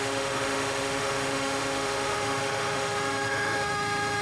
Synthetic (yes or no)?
yes